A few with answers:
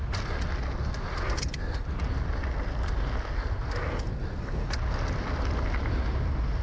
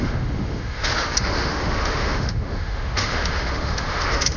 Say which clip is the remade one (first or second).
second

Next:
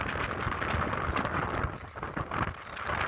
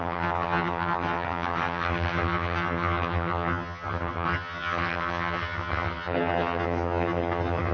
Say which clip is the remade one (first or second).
second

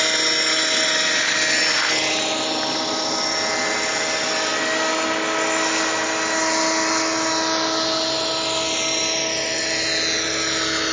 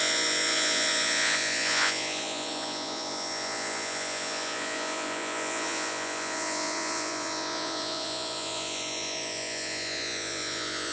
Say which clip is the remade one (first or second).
second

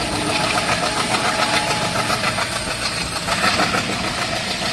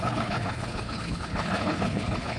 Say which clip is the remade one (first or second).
second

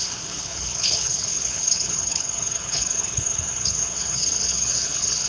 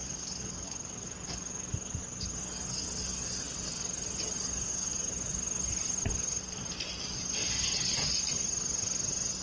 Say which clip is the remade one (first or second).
first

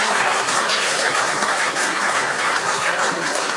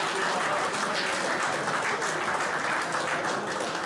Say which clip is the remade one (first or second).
first